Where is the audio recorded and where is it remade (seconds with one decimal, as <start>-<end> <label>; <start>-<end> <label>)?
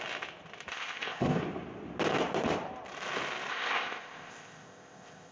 0.0-0.7 recorded; 0.7-1.4 remade; 1.4-3.5 recorded; 3.5-5.3 remade